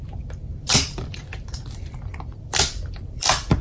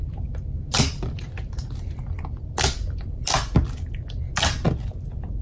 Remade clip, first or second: first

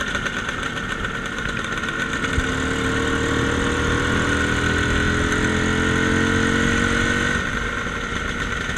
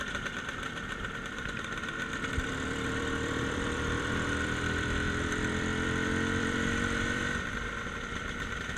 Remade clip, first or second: second